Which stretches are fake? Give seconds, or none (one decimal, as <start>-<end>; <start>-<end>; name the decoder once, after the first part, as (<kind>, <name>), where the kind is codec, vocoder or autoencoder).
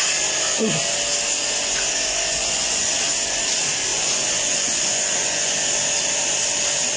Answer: 2.3-2.9 (vocoder, Vocos); 3.9-5.5